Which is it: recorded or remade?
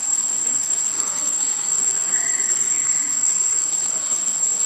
remade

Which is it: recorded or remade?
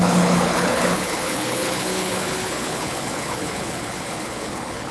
remade